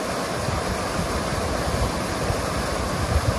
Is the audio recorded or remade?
remade